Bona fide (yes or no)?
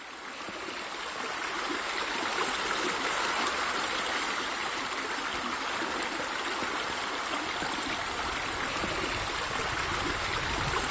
yes